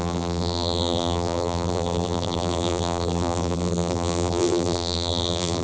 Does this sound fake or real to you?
fake